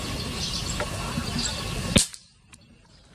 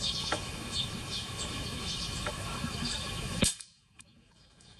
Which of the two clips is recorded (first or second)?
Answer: first